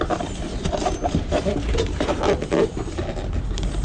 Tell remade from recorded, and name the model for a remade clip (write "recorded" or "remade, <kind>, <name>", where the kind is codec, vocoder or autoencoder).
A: recorded